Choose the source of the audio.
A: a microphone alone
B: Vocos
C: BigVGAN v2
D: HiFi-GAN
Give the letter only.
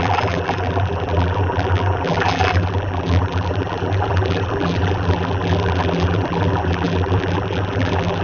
C